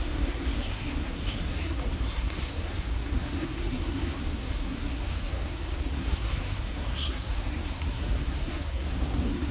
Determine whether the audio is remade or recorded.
remade